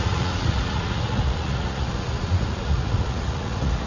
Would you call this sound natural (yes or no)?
no